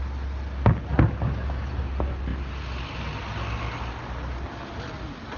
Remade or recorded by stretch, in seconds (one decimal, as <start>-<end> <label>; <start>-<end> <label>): 0.0-5.4 recorded